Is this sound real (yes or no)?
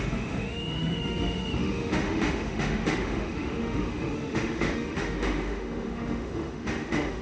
no